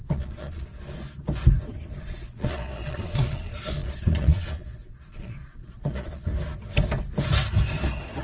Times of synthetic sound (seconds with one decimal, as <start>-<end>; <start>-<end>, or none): 0.0-0.7; 2.0-6.3